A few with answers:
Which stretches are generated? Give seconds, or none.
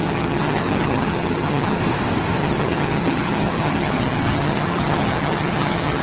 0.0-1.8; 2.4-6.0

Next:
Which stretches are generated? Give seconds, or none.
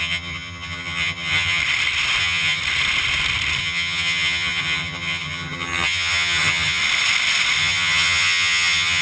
0.0-1.6; 2.2-2.6; 3.6-6.8; 7.6-9.0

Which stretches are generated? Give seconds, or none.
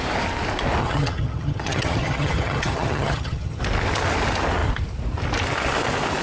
0.8-3.6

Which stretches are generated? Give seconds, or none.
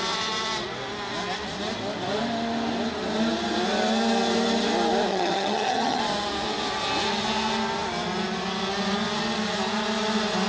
5.1-6.0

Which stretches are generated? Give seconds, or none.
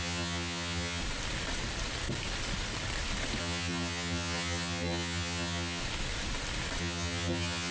0.0-1.0; 3.4-5.8; 6.8-7.7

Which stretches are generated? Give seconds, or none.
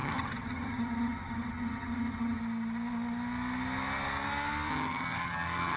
0.0-2.4; 4.7-5.8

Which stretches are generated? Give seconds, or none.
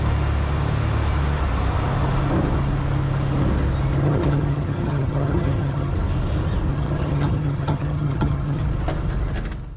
4.0-5.9; 6.7-8.7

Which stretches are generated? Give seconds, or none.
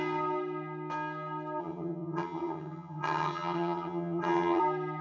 1.6-4.6